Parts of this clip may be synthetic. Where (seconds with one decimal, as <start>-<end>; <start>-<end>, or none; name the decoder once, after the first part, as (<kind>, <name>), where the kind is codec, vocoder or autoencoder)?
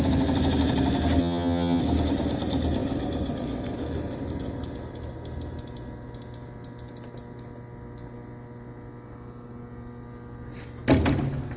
1.2-1.8 (vocoder, HiFi-GAN)